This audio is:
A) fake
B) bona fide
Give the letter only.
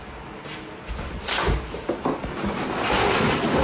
B